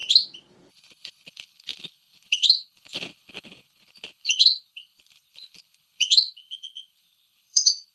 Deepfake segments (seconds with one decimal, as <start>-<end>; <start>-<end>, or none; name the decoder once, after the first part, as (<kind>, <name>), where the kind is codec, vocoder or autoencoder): 0.7-7.9 (codec, HILCodec)